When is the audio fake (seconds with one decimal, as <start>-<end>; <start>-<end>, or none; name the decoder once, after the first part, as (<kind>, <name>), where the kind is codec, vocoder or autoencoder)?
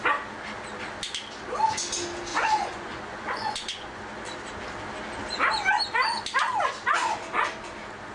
2.3-4.0 (vocoder, Vocos)